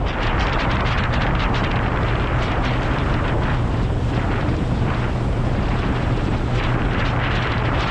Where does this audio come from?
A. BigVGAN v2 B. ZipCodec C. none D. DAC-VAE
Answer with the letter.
A